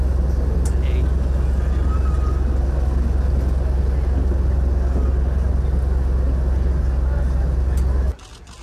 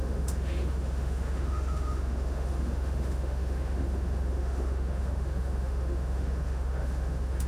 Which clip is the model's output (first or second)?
second